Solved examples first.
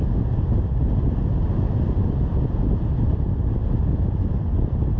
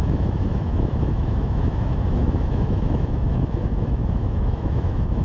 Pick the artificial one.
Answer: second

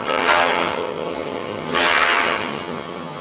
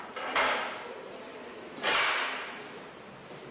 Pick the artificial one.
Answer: first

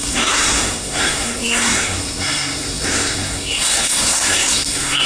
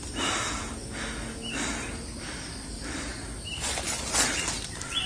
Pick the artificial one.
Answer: first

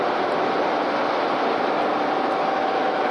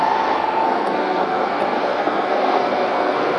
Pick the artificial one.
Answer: second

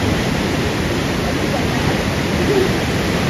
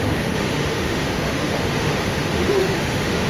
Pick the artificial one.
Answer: second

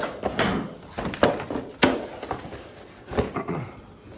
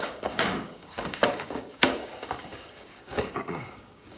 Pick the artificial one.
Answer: second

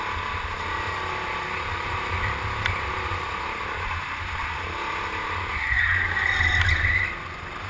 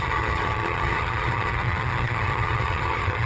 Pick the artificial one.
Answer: second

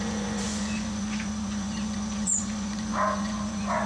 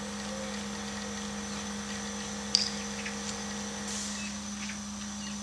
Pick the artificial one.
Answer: first